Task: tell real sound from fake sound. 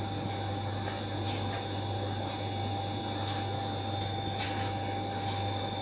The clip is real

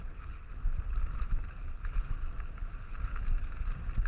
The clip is real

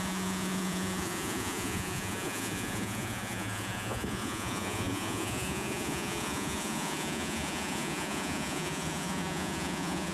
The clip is fake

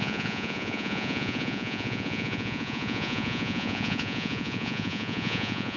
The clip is fake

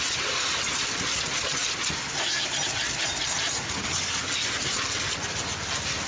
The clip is real